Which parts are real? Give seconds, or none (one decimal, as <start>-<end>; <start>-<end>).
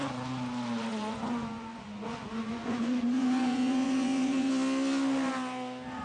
0.0-0.9; 4.5-6.0